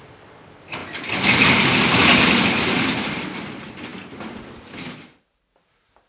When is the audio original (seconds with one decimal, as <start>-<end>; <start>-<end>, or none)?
0.0-6.1